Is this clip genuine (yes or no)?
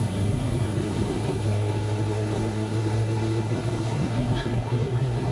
no